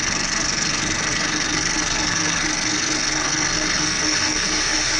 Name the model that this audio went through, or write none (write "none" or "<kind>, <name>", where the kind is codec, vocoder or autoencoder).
codec, SNAC